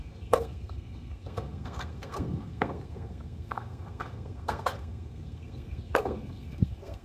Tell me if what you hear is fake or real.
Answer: fake